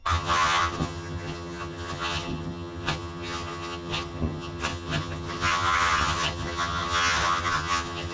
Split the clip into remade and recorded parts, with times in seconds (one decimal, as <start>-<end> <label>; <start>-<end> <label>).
0.0-8.1 remade